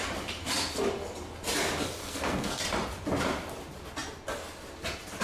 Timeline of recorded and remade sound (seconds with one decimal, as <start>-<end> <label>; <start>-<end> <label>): 0.0-2.0 recorded; 2.0-2.6 remade; 2.6-5.2 recorded